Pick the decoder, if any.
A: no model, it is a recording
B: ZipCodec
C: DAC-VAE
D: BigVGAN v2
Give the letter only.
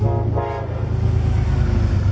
A